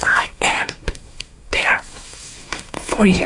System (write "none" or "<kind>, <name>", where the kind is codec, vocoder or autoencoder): codec, SNAC